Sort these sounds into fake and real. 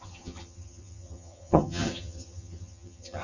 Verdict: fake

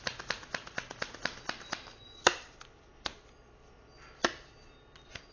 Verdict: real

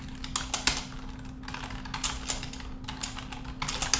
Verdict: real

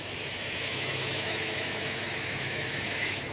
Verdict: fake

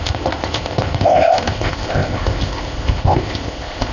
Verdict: fake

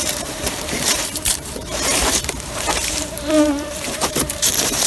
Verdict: fake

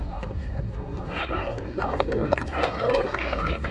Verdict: fake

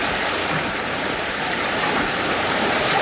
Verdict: fake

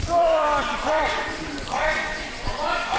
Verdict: fake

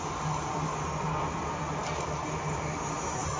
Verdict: real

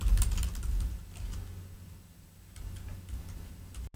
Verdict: real